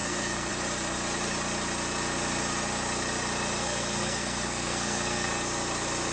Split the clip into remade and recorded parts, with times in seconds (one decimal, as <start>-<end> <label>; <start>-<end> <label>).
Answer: 0.0-0.5 remade; 0.5-3.6 recorded; 3.6-5.3 remade; 5.3-6.1 recorded